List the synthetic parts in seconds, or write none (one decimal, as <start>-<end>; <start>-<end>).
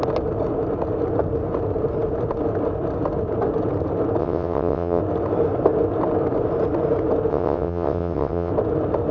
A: 4.2-5.0; 7.3-8.5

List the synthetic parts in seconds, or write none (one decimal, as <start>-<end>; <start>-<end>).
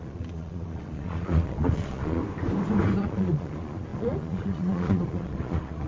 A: 0.0-2.2; 3.0-5.9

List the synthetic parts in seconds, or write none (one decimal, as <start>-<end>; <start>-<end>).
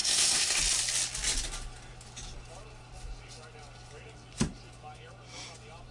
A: 0.0-0.6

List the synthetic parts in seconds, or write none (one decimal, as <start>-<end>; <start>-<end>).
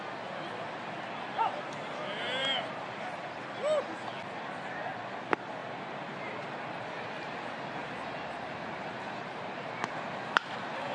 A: 2.4-3.4; 7.8-10.5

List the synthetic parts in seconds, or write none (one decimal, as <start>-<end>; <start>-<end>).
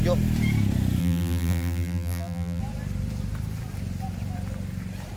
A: 1.0-2.6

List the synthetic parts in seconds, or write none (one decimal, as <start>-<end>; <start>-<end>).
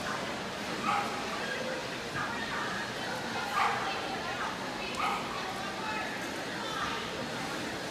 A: none